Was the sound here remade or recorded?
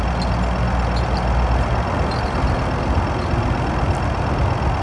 recorded